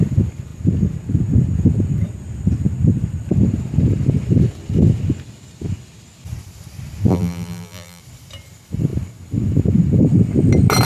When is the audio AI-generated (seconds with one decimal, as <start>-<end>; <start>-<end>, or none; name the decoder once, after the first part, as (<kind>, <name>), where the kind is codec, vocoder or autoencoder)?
7.1-8.0 (vocoder, BigVGAN v2)